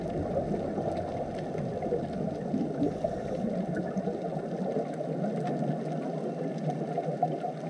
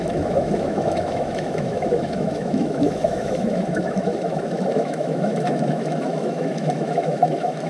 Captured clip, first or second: first